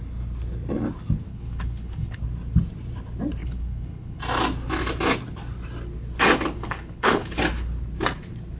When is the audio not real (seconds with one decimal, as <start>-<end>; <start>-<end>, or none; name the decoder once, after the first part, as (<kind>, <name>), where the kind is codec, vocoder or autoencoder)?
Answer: 1.3-2.2 (codec, HILCodec); 3.4-4.2; 6.6-7.4